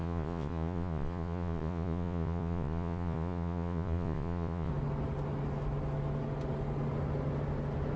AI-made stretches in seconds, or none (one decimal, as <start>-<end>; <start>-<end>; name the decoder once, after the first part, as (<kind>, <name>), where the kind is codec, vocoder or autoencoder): 0.0-4.7 (vocoder, Vocos)